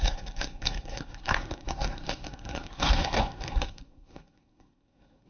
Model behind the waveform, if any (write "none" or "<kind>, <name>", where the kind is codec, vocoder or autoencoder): codec, SNAC